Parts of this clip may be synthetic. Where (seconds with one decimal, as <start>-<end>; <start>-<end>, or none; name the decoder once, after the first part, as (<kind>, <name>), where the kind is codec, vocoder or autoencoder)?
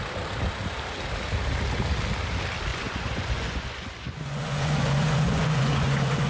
2.7-6.3 (vocoder, Vocos)